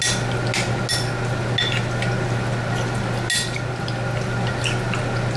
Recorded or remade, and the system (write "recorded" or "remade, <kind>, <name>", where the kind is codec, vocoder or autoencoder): recorded